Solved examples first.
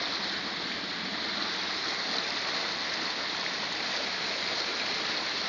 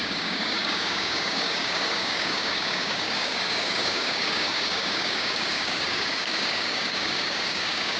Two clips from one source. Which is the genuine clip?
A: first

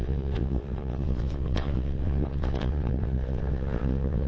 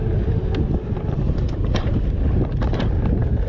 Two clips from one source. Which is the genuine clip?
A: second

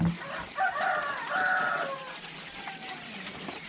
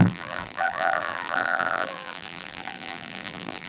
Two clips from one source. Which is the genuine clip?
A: first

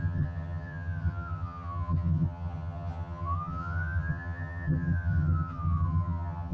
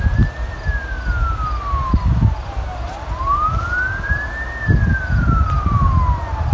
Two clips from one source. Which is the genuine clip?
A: second